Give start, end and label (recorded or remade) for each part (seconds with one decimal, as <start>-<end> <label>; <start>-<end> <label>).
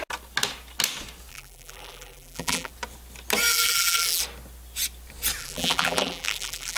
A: 0.0-1.3 recorded; 1.3-2.7 remade; 2.7-3.5 recorded; 3.5-4.2 remade; 4.2-5.4 recorded; 5.4-6.8 remade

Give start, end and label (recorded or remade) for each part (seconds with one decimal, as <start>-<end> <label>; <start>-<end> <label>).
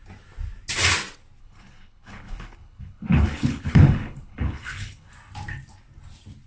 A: 0.0-1.4 recorded; 1.4-5.1 remade; 5.1-6.5 recorded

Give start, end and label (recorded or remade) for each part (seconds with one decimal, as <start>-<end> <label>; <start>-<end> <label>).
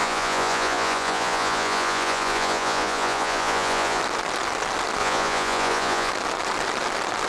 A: 0.0-4.0 remade; 4.0-5.0 recorded; 5.0-6.1 remade; 6.1-7.3 recorded